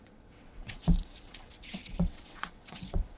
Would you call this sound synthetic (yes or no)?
yes